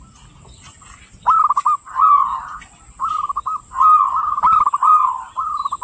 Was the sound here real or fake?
real